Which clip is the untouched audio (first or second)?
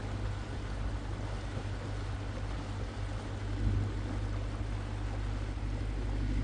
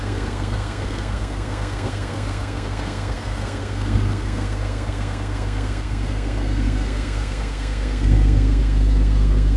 first